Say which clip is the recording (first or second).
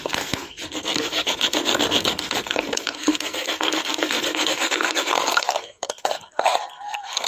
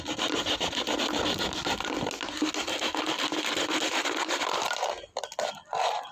second